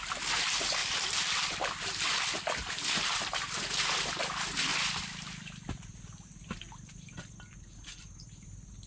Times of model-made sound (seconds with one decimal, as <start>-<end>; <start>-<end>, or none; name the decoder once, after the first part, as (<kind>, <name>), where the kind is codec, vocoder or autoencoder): 0.8-1.7 (vocoder, BigVGAN v2); 4.7-8.9